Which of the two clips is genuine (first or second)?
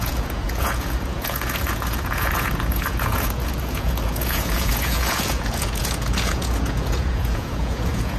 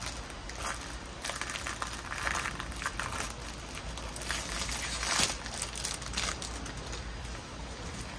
second